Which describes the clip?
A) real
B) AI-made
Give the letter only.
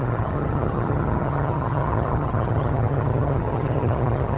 B